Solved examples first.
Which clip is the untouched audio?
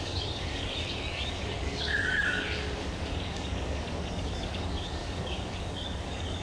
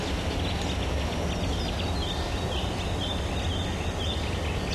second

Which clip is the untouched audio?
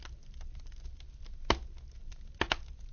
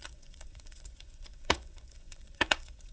first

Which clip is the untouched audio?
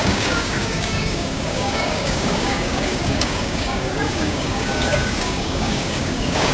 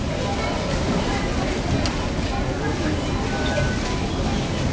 second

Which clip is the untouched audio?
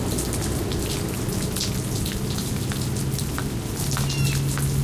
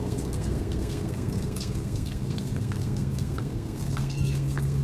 first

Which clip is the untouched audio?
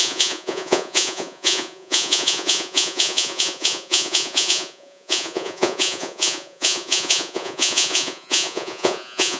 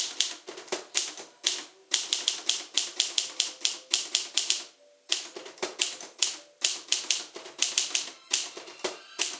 second